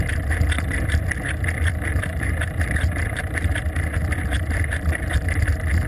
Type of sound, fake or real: real